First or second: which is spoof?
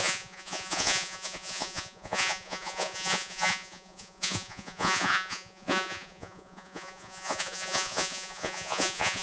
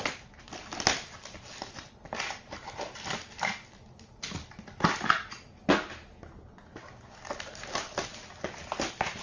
first